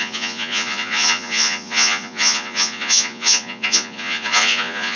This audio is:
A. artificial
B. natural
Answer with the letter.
A